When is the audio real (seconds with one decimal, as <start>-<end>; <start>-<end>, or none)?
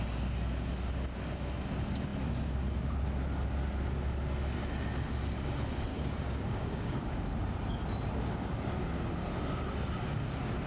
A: 0.0-5.9; 7.1-10.7